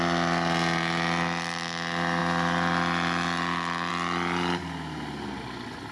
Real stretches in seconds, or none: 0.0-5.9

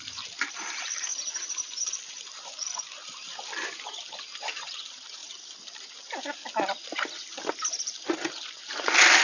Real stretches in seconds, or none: 1.1-1.8; 6.4-7.7

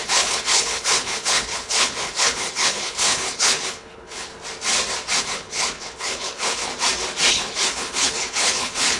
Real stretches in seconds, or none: 4.3-5.2; 6.7-7.3

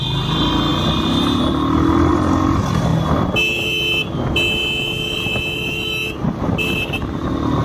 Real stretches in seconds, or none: 0.0-7.6